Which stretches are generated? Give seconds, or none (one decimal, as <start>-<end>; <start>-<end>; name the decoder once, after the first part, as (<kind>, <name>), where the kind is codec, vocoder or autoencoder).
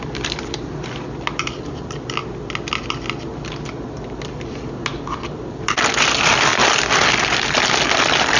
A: 0.0-2.2 (vocoder, BigVGAN v2); 4.9-6.5; 7.1-8.4